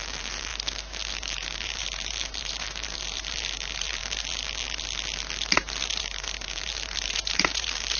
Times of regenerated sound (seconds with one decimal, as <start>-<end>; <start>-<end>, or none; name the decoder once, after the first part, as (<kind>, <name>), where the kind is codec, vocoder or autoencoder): 0.0-0.5 (vocoder, BigVGAN v2); 1.1-4.0; 6.0-8.0